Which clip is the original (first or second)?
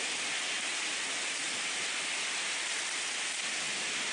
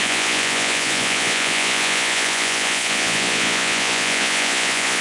first